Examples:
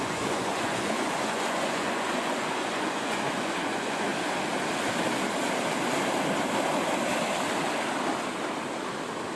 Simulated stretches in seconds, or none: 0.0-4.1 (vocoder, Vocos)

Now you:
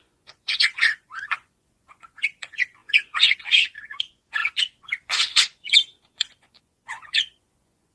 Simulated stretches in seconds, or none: 0.0-7.9 (vocoder, Vocos)